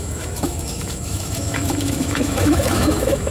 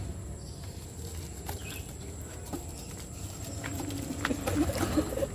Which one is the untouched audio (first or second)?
second